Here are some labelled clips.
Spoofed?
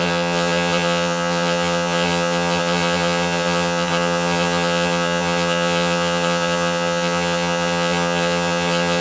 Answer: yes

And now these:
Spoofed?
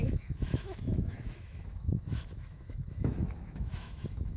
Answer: yes